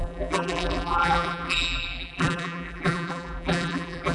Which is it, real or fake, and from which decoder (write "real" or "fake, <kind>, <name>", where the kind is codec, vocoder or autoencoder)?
fake, vocoder, BigVGAN v2